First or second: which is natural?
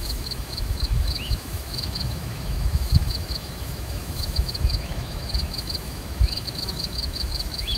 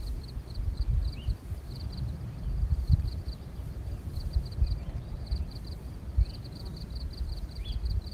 second